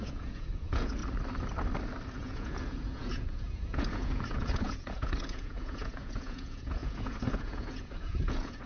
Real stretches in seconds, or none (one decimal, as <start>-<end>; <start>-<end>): 1.0-2.1